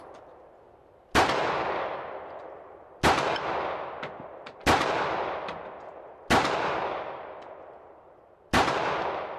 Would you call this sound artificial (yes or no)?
no